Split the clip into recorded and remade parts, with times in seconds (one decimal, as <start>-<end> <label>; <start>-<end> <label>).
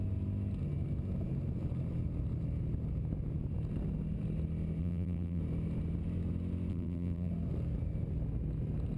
0.0-4.8 recorded; 4.8-5.4 remade; 5.4-6.7 recorded; 6.7-7.3 remade; 7.3-9.0 recorded